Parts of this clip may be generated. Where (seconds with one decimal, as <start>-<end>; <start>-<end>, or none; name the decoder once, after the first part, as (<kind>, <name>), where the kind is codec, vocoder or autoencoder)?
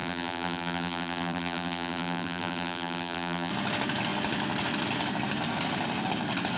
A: 0.0-3.5 (vocoder, BigVGAN v2)